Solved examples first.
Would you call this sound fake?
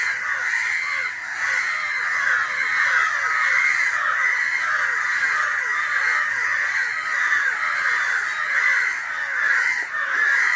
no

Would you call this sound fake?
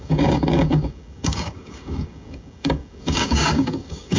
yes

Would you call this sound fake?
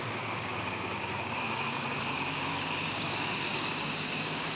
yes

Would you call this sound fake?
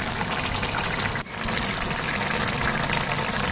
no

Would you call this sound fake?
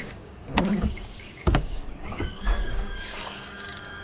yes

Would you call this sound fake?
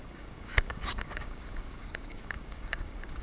yes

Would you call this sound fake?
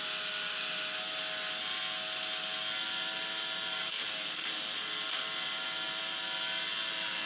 no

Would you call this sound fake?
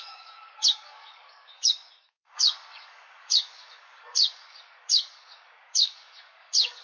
yes